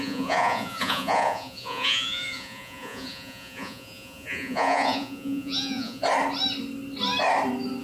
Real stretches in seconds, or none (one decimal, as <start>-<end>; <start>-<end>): 6.0-7.8